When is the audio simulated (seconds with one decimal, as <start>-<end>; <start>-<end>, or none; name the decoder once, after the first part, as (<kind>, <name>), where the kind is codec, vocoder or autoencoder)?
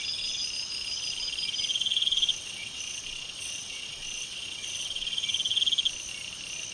1.7-5.6 (vocoder, WaveNeXt)